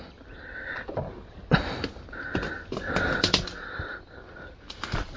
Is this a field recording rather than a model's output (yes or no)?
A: yes